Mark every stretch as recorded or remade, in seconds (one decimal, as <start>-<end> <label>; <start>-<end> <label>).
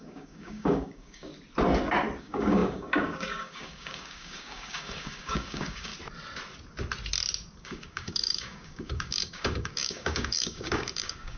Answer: 0.0-1.3 remade; 1.3-2.2 recorded; 2.2-5.9 remade; 5.9-7.6 recorded; 7.6-11.4 remade